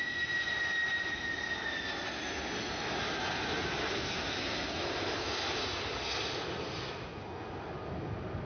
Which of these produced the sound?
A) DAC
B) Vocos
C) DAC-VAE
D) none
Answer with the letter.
D